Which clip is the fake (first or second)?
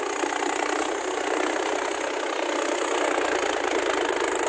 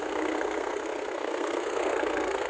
second